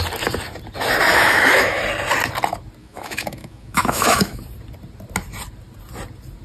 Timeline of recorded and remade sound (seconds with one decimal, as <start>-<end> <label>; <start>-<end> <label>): 0.0-1.1 recorded; 1.1-1.8 remade; 1.8-2.8 recorded; 2.8-4.4 remade; 4.4-6.4 recorded